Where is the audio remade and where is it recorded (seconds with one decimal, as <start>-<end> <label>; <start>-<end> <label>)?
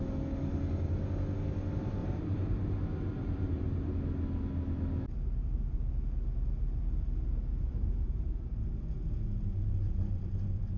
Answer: 0.0-2.0 recorded; 2.0-3.9 remade; 3.9-5.4 recorded; 5.4-5.9 remade; 5.9-7.7 recorded; 7.7-10.8 remade